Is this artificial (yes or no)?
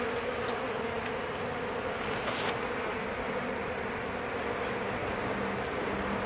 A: no